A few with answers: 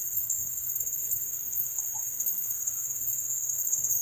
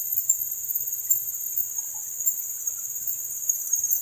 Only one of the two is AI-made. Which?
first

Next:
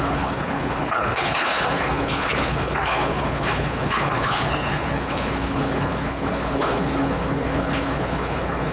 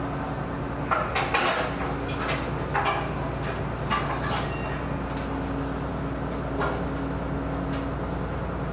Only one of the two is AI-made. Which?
first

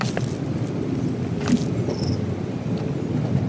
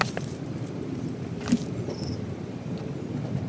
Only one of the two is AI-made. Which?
second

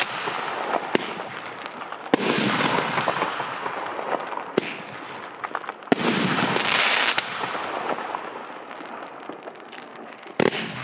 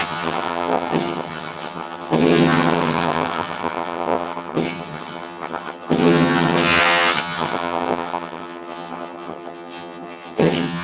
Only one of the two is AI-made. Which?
second